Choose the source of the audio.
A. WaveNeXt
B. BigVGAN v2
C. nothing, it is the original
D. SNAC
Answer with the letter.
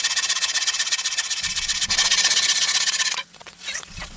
A